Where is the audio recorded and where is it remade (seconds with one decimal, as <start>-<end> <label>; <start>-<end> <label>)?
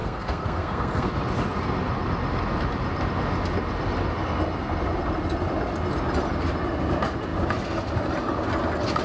0.0-1.1 remade; 1.1-9.0 recorded